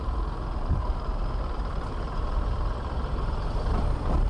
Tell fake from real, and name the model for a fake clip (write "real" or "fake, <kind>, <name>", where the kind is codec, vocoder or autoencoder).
fake, vocoder, BigVGAN v2